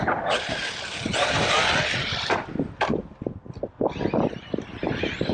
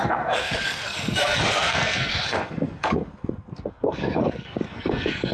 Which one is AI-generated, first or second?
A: second